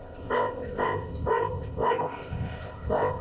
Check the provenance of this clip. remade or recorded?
remade